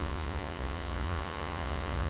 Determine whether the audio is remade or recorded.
remade